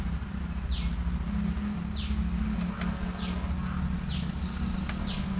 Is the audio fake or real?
real